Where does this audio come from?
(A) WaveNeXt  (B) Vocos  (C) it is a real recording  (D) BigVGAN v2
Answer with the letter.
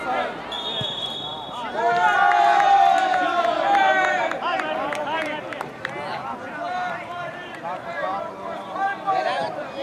D